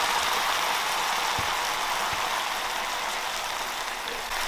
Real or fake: real